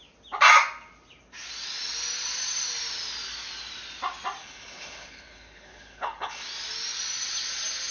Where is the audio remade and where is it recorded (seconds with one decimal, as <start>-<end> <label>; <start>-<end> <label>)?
0.0-4.4 recorded; 4.4-6.4 remade; 6.4-7.9 recorded